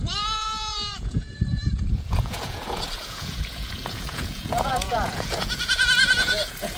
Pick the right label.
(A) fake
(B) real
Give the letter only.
A